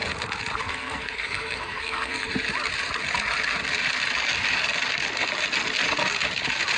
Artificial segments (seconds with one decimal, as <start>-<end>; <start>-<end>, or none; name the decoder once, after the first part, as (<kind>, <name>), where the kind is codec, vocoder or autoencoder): 0.6-2.3 (codec, SNAC)